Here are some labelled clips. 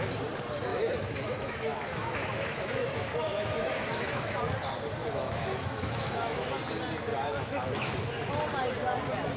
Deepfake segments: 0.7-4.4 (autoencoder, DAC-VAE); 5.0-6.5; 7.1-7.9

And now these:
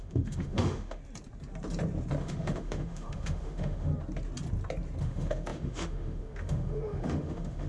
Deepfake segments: 0.0-1.0 (autoencoder, DAC-VAE); 2.2-3.9; 5.0-7.7

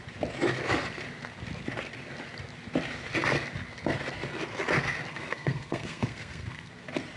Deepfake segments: 5.1-6.7 (codec, SNAC)

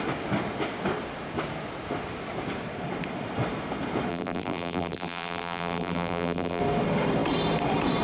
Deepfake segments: 4.1-6.6 (vocoder, BigVGAN v2)